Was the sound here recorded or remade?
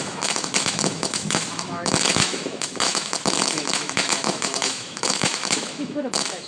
remade